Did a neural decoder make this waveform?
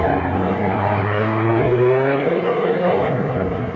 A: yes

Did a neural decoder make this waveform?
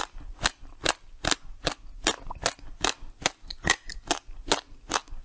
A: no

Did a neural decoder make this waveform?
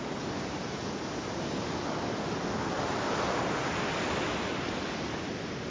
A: no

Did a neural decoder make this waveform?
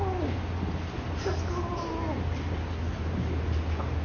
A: no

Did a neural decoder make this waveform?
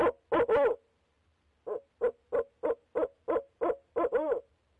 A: no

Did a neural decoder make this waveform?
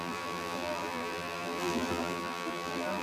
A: yes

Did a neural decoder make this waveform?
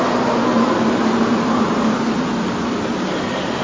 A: no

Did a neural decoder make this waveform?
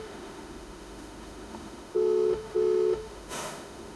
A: yes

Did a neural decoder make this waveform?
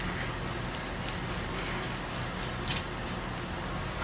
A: no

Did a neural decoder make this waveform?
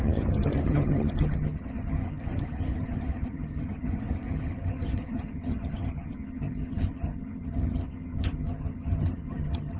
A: yes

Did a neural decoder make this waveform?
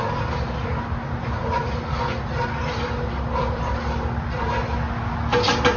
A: no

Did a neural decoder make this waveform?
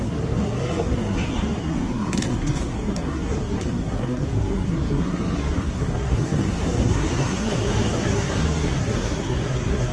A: yes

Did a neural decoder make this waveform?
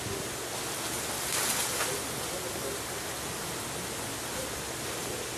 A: no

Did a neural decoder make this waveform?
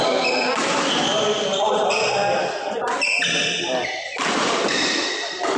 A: no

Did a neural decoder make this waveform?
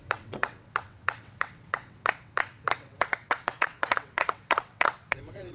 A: yes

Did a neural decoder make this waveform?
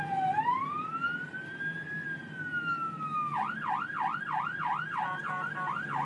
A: no